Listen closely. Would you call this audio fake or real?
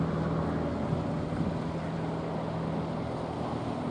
real